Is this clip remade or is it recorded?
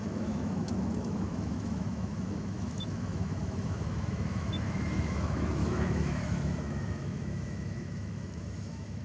remade